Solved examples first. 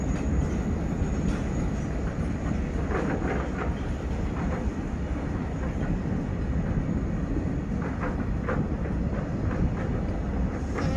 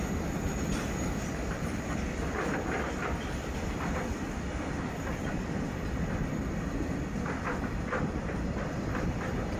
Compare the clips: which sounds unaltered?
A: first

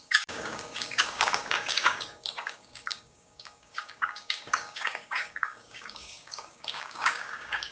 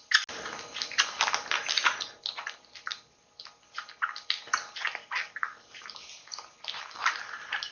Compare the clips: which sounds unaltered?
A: second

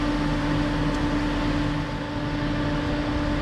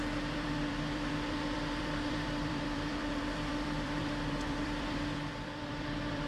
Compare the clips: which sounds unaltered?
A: first